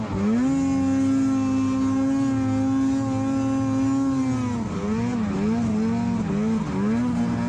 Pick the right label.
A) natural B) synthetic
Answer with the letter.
A